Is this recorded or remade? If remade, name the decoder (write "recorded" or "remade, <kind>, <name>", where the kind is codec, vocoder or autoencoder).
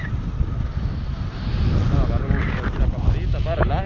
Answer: recorded